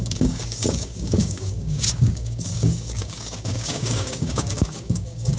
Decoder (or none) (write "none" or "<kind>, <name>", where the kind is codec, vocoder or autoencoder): codec, DAC